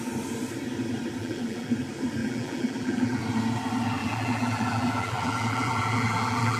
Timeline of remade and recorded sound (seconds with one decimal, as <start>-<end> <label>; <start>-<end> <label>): 0.0-1.2 recorded; 1.2-1.7 remade; 1.7-2.2 recorded; 2.2-3.2 remade; 3.2-4.0 recorded; 4.0-6.6 remade